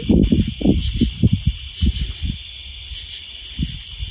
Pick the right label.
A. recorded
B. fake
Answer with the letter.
A